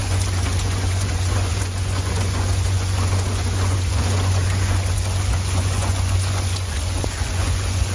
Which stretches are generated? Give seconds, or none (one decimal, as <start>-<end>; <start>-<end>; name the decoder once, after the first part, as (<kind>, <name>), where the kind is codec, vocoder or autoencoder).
0.0-7.9 (vocoder, Vocos)